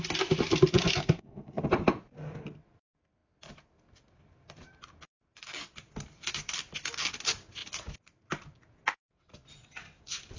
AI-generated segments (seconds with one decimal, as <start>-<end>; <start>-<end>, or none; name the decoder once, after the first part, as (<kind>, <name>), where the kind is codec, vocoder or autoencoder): 1.0-1.6 (codec, SNAC)